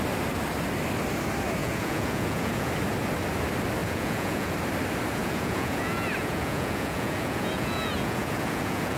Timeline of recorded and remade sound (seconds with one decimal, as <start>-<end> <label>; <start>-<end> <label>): 0.0-1.6 recorded; 1.6-2.7 remade; 2.7-3.8 recorded; 3.8-4.5 remade; 4.5-5.2 recorded; 5.2-9.0 remade